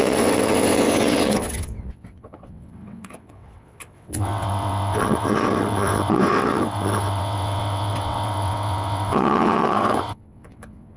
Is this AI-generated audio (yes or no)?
yes